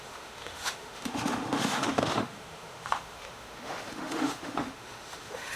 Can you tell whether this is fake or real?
fake